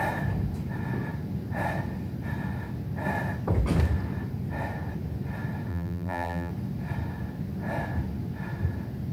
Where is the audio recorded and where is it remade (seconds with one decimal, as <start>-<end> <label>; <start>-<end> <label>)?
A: 0.0-5.7 recorded; 5.7-6.5 remade; 6.5-9.1 recorded